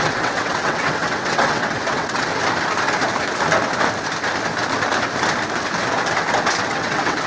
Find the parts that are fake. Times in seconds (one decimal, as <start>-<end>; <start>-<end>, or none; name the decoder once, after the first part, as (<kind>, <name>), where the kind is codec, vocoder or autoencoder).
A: 0.0-2.3 (vocoder, WaveNeXt); 6.7-7.3